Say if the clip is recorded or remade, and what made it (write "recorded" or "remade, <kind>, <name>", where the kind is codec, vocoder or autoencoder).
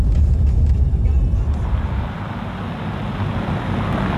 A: recorded